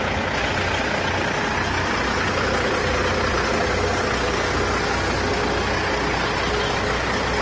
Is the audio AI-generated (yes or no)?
no